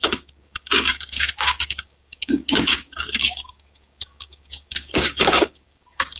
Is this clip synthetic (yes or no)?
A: yes